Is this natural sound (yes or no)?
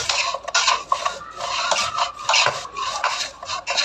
yes